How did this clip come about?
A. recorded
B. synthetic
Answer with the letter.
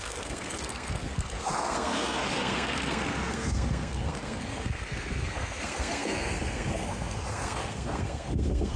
B